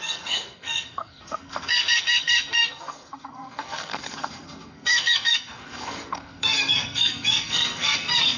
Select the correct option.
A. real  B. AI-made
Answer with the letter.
B